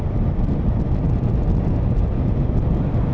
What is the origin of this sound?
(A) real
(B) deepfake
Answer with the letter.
A